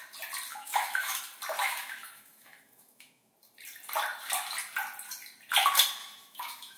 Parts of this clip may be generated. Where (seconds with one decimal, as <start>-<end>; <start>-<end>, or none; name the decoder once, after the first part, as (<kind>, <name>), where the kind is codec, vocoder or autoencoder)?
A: 0.5-1.2 (autoencoder, DAC-VAE); 1.6-3.3; 6.0-6.8